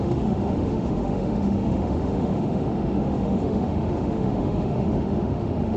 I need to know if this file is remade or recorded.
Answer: remade